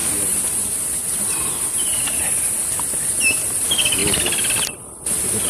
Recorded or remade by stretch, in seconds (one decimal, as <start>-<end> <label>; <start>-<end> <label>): 0.0-5.5 recorded